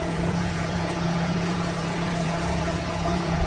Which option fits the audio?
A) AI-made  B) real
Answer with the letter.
A